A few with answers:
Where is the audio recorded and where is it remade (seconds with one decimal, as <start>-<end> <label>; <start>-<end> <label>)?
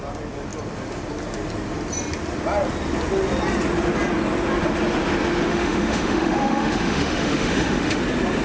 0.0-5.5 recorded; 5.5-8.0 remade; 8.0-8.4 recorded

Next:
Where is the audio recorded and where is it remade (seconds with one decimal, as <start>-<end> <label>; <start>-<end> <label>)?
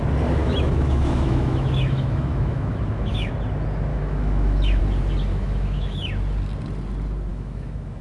0.0-0.4 recorded; 0.4-3.3 remade; 3.3-3.9 recorded; 3.9-4.8 remade; 4.8-5.3 recorded; 5.3-6.1 remade; 6.1-7.3 recorded; 7.3-8.0 remade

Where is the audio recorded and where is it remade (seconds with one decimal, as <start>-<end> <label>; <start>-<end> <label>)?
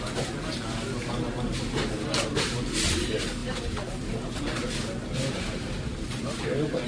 0.0-6.9 recorded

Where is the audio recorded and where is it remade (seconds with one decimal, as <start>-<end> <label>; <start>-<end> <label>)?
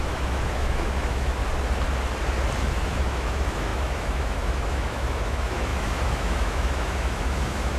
0.0-1.4 remade; 1.4-2.7 recorded; 2.7-7.8 remade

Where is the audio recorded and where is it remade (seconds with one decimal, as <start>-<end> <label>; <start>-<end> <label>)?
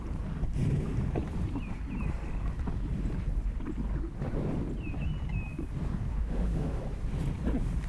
0.0-6.1 recorded; 6.1-6.8 remade; 6.8-7.9 recorded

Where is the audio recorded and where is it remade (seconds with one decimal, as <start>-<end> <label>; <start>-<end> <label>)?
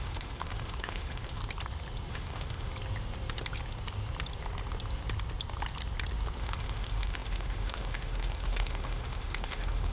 0.0-1.4 remade; 1.4-2.1 recorded; 2.1-2.7 remade; 2.7-6.4 recorded; 6.4-9.9 remade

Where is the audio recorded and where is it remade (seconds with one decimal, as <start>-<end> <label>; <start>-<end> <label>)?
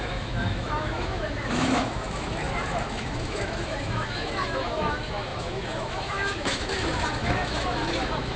0.0-8.4 remade